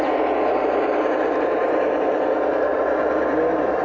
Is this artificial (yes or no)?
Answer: no